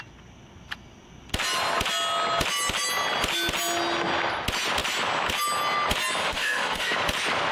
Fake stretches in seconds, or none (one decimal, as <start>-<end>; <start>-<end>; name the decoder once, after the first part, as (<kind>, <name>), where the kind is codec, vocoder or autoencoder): 6.2-6.9 (autoencoder, DAC-VAE)